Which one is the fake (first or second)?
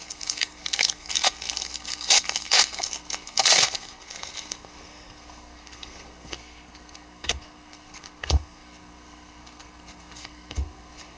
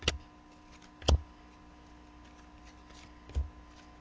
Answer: first